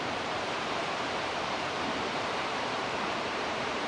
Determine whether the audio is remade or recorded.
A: remade